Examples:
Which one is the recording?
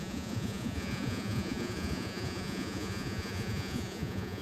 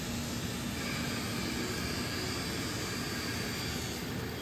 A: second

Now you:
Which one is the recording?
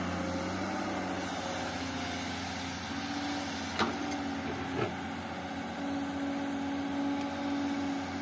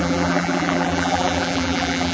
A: first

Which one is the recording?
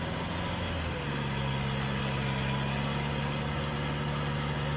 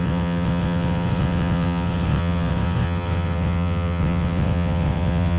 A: first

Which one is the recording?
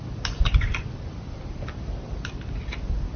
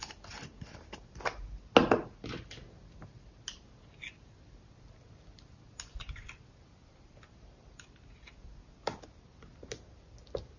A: second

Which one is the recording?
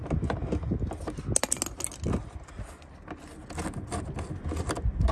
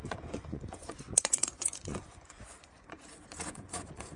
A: first